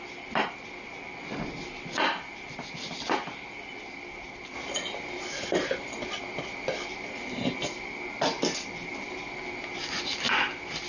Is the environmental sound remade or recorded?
recorded